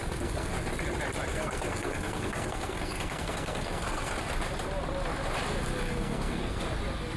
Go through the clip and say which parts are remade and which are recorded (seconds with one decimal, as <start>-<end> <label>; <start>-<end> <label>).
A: 0.0-0.5 remade; 0.5-1.3 recorded; 1.3-4.1 remade; 4.1-5.9 recorded; 5.9-6.6 remade; 6.6-7.2 recorded

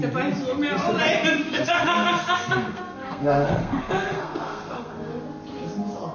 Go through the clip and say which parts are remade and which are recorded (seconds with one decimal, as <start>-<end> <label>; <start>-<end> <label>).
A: 0.0-1.4 recorded; 1.4-5.1 remade; 5.1-6.1 recorded

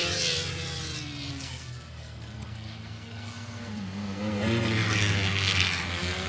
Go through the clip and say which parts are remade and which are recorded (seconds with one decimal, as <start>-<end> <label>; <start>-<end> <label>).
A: 0.0-1.3 recorded; 1.3-6.3 remade

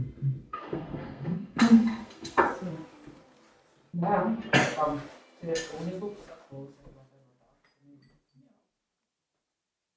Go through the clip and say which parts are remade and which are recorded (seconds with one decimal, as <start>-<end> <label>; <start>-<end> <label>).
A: 0.0-0.5 recorded; 0.5-2.5 remade; 2.5-10.0 recorded

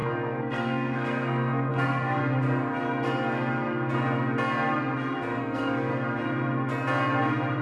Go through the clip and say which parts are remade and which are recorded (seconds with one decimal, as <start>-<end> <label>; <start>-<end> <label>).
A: 0.0-2.2 remade; 2.2-5.4 recorded; 5.4-5.9 remade; 5.9-7.6 recorded

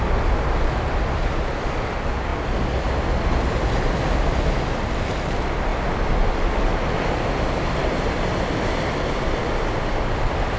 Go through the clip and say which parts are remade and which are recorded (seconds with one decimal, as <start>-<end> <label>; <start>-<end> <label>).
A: 0.0-10.6 recorded